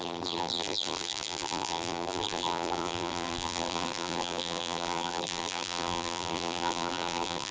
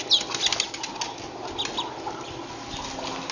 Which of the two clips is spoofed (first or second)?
first